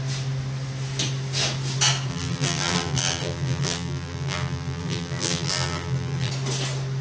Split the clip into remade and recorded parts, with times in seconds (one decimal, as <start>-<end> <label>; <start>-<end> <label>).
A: 0.0-2.1 recorded; 2.1-6.3 remade; 6.3-7.0 recorded